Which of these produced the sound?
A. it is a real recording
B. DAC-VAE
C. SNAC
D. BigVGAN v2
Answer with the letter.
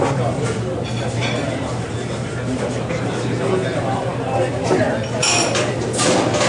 A